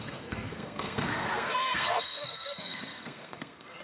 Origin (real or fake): fake